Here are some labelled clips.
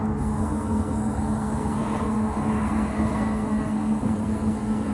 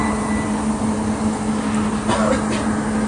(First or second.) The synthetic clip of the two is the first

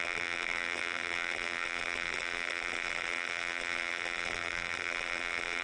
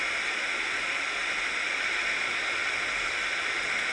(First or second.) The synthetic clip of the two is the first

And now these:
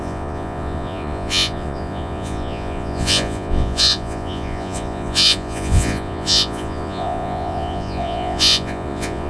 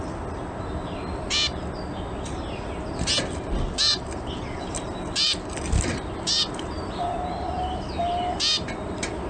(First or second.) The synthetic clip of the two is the first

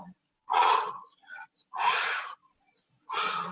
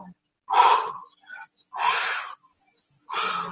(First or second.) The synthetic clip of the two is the first